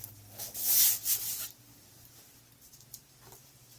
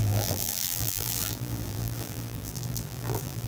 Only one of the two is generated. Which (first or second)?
second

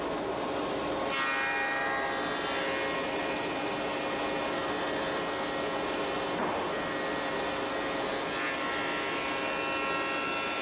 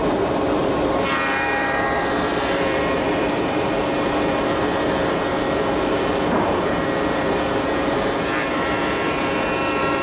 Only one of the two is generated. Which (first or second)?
second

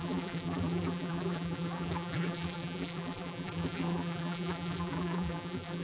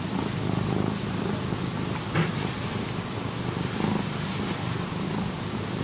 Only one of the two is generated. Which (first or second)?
first